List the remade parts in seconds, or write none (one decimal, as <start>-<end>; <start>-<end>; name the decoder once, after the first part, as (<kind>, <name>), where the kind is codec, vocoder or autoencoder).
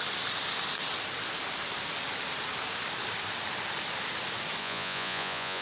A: 4.6-5.6 (vocoder, Vocos)